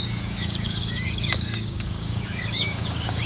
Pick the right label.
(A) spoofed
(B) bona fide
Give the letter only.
A